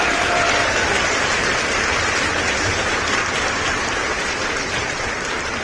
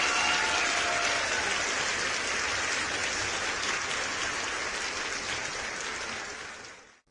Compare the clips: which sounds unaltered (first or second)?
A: second